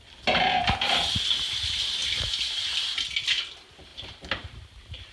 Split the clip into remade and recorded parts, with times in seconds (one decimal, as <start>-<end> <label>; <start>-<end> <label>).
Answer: 0.0-5.1 recorded